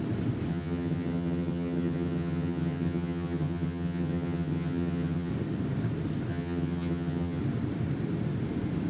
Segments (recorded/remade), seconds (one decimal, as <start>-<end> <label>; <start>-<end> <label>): 0.0-0.5 recorded; 0.5-5.3 remade; 5.3-6.3 recorded; 6.3-7.4 remade; 7.4-8.9 recorded